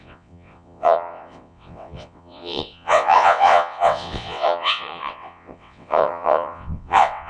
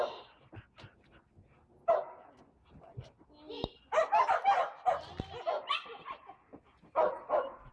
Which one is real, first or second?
second